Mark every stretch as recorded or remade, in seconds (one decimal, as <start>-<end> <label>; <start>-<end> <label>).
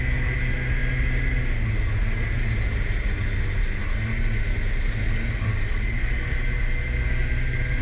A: 0.0-7.8 recorded